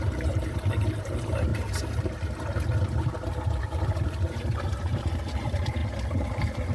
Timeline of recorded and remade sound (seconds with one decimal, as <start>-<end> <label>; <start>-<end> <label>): 0.0-1.5 remade; 1.5-3.6 recorded; 3.6-6.7 remade